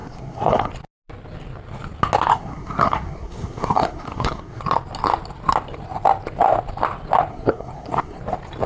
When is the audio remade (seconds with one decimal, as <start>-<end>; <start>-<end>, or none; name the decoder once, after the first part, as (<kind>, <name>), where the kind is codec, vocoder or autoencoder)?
0.0-0.7 (codec, SNAC); 2.3-4.6; 7.3-8.2